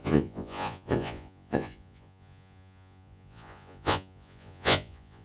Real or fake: fake